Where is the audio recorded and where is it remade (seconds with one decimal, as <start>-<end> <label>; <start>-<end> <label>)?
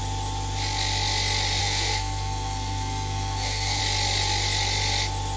0.0-1.6 recorded; 1.6-3.8 remade; 3.8-5.4 recorded